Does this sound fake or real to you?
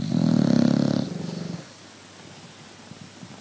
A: real